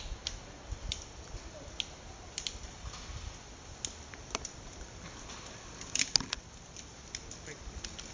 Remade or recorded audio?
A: recorded